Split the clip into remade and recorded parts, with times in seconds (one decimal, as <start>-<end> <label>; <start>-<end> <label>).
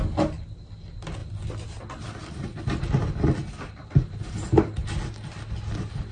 0.0-6.1 recorded